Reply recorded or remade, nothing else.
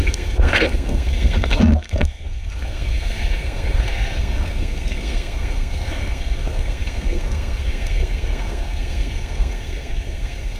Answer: remade